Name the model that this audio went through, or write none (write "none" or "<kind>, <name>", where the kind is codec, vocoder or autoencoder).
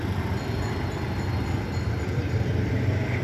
none